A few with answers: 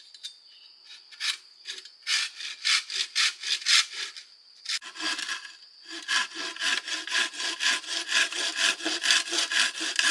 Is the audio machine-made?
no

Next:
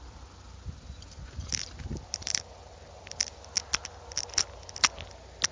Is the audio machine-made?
no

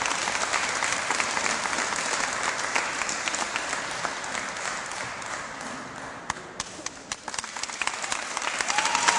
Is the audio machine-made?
no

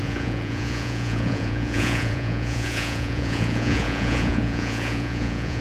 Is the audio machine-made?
yes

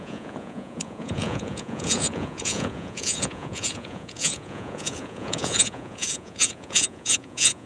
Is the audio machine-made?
yes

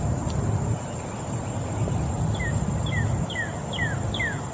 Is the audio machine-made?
no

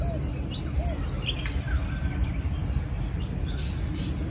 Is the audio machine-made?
no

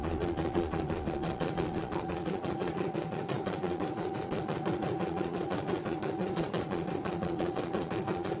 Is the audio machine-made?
yes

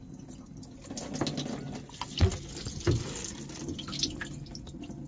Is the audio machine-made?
no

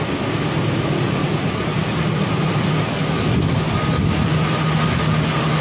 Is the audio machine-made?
no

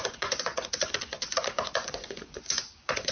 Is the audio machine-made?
yes